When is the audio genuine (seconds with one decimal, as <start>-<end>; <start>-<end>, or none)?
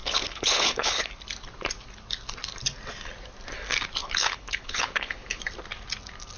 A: 1.1-4.0; 5.4-6.4